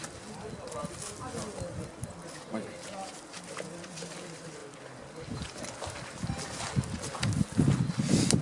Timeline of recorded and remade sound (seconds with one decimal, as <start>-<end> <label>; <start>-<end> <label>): 0.0-8.4 recorded